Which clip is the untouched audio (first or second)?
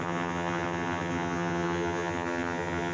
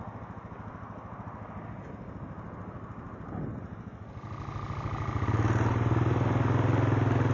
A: second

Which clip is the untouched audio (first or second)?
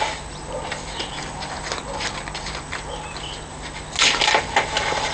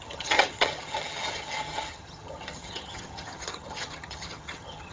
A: first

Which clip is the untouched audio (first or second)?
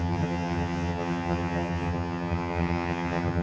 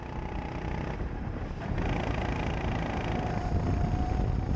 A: second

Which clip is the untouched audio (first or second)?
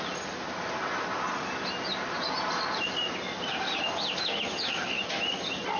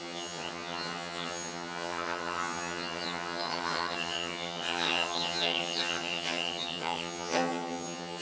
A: first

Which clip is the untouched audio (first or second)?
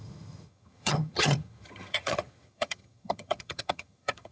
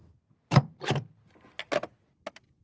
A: second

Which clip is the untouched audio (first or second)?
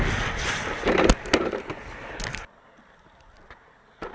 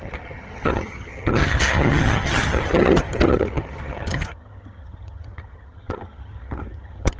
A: first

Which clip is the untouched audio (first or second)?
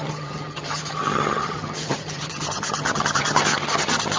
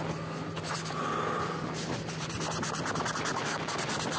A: second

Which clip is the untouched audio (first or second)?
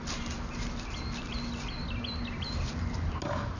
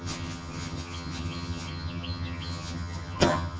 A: first